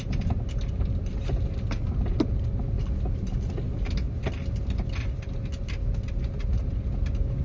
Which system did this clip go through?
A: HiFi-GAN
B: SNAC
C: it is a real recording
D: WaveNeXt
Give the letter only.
C